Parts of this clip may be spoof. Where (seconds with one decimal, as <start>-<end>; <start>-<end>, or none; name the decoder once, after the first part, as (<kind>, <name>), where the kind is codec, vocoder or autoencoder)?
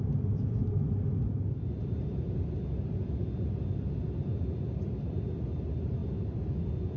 none